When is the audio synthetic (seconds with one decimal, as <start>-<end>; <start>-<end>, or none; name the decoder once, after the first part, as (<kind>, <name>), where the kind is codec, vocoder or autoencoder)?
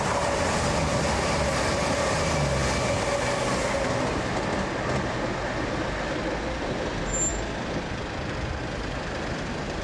none